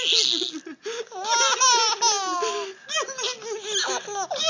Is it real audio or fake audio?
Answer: real